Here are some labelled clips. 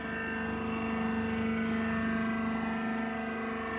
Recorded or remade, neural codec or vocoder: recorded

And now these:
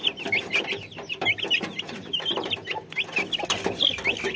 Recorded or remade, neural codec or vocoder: recorded